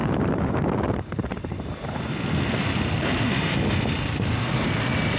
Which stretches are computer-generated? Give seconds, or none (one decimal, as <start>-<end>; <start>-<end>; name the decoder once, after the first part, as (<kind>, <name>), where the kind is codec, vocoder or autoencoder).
0.0-2.0 (vocoder, BigVGAN v2)